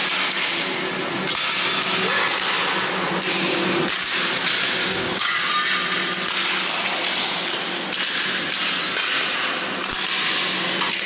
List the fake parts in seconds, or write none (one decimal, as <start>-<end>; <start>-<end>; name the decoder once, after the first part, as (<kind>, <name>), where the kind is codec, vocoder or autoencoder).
4.8-5.5 (codec, DAC)